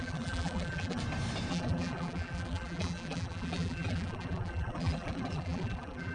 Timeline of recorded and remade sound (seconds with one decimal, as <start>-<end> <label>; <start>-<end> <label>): 0.0-1.0 remade; 1.0-1.5 recorded; 1.5-6.1 remade